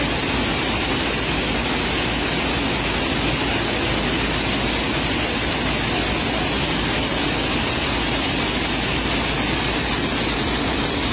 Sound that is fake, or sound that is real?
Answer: real